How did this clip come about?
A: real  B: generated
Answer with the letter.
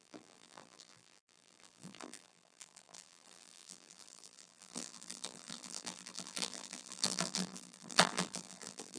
B